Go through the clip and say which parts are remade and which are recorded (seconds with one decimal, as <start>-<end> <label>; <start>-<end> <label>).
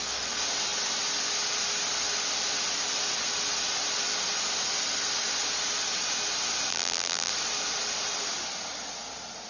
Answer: 0.0-6.7 recorded; 6.7-7.3 remade; 7.3-9.5 recorded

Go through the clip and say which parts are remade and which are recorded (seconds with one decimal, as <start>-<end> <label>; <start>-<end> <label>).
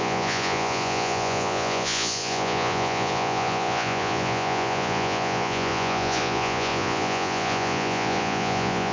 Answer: 0.0-8.9 remade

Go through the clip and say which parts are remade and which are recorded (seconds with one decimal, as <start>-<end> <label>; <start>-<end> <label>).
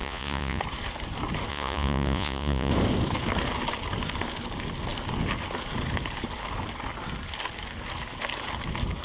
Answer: 0.0-0.6 remade; 0.6-1.5 recorded; 1.5-2.7 remade; 2.7-9.0 recorded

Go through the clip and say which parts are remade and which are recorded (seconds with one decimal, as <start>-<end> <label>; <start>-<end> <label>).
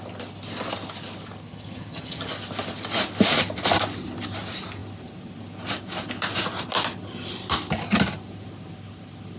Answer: 0.0-1.4 recorded; 1.4-2.3 remade; 2.3-9.4 recorded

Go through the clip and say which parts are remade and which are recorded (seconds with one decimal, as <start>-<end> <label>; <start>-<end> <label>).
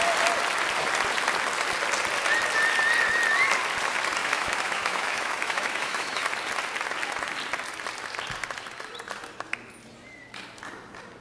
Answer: 0.0-4.2 recorded; 4.2-6.2 remade; 6.2-11.2 recorded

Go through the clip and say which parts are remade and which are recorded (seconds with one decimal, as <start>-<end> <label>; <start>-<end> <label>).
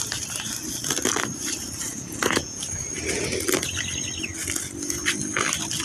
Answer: 0.0-1.9 recorded; 1.9-2.9 remade; 2.9-5.8 recorded